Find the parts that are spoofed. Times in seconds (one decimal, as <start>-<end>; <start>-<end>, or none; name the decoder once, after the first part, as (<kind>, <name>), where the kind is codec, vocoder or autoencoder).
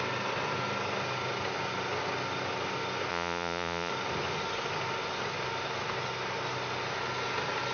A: 3.1-3.9 (vocoder, Vocos)